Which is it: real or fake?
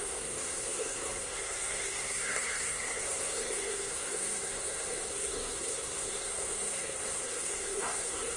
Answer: fake